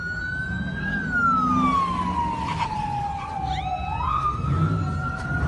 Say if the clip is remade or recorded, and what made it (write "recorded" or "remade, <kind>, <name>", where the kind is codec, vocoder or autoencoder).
recorded